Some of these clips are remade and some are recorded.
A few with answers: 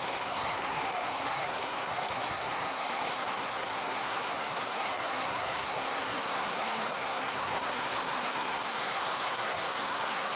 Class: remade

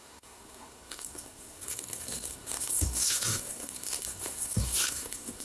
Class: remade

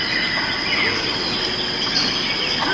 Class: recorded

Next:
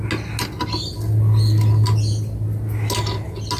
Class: recorded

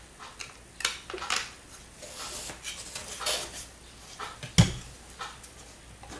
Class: recorded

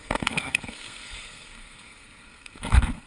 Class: remade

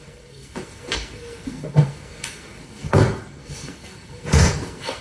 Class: remade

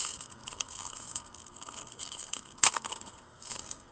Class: remade